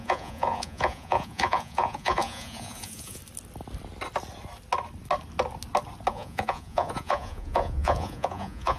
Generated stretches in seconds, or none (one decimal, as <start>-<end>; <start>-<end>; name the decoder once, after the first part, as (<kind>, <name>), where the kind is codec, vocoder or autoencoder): 0.0-3.2 (vocoder, Vocos); 6.1-8.8